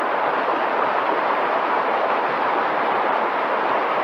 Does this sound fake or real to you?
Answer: fake